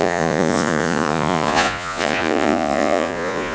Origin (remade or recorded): remade